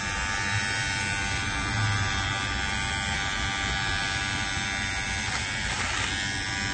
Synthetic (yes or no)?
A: no